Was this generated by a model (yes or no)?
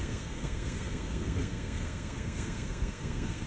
yes